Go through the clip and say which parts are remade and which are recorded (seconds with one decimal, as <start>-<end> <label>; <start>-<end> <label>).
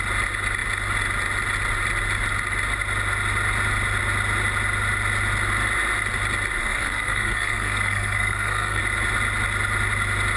0.0-6.6 recorded; 6.6-8.8 remade; 8.8-10.4 recorded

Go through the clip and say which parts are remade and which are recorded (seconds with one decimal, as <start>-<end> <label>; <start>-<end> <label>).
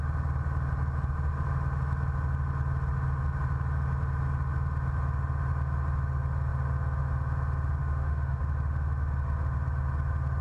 0.0-7.8 recorded; 7.8-8.4 remade; 8.4-10.4 recorded